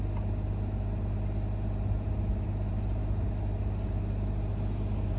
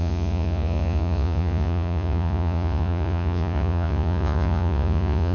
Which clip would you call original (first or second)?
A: first